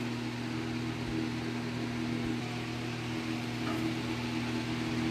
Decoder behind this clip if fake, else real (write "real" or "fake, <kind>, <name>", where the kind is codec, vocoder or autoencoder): real